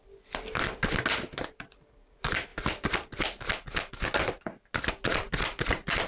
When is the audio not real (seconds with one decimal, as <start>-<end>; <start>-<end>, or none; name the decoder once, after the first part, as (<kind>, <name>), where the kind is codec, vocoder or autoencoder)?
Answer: none